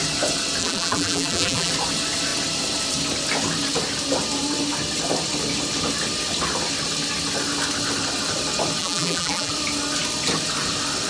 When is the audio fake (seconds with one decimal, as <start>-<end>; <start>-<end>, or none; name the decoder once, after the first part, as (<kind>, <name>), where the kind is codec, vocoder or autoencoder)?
0.6-1.7 (vocoder, BigVGAN v2); 8.8-9.5